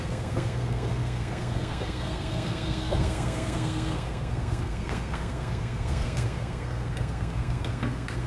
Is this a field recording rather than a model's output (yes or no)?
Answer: no